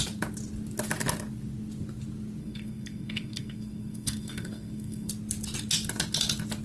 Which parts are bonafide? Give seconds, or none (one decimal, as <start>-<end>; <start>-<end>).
0.0-2.4; 5.1-6.6